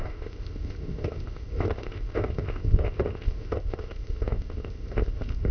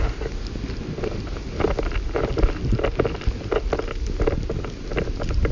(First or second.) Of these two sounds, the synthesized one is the first